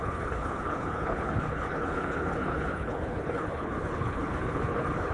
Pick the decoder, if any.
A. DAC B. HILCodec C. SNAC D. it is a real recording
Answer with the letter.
B